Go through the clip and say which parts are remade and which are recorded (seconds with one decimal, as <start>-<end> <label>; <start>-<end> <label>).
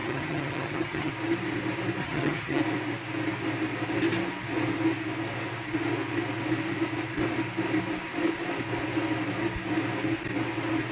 0.0-1.1 remade; 1.1-2.0 recorded; 2.0-2.6 remade; 2.6-10.9 recorded